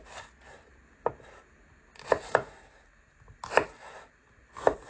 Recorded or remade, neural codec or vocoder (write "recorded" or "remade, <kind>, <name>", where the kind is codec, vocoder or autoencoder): recorded